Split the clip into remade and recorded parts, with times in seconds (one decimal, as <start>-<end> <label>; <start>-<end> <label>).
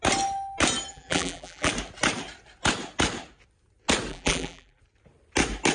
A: 0.0-0.9 recorded; 0.9-1.7 remade; 1.7-4.1 recorded; 4.1-4.8 remade; 4.8-5.7 recorded